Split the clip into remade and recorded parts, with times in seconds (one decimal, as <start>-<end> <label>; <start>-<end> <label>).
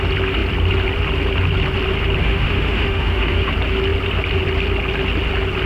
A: 0.0-2.2 recorded; 2.2-3.5 remade; 3.5-5.7 recorded